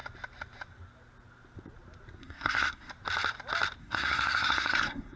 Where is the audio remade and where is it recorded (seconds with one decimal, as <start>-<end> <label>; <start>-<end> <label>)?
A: 0.0-2.2 recorded; 2.2-2.9 remade; 2.9-3.8 recorded; 3.8-5.2 remade